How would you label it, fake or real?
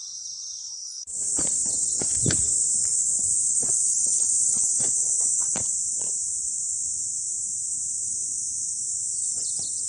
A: fake